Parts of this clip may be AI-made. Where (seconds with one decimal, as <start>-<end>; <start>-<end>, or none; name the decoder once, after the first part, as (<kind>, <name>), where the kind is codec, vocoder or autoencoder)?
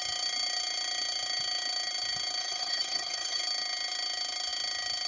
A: 2.4-3.4 (codec, HILCodec)